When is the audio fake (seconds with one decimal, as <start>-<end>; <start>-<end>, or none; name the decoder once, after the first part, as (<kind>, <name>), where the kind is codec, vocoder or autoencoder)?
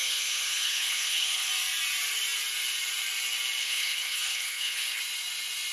0.0-1.5 (codec, HILCodec); 3.6-5.0